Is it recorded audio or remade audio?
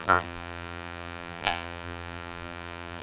remade